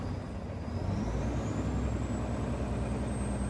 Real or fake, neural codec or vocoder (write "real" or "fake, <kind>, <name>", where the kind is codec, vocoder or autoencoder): real